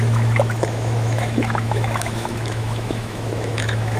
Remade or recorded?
remade